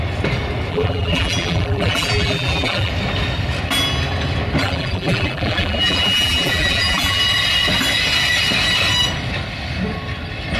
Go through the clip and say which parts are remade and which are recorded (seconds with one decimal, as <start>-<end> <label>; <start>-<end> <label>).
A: 0.0-0.7 recorded; 0.7-2.9 remade; 2.9-4.6 recorded; 4.6-7.2 remade; 7.2-10.6 recorded